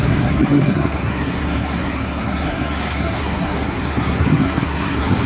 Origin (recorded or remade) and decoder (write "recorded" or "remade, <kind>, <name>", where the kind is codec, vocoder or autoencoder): remade, codec, SNAC